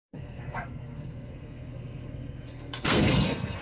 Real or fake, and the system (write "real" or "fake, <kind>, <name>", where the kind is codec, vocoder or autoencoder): fake, codec, SNAC